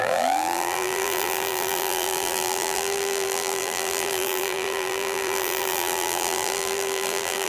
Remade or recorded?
remade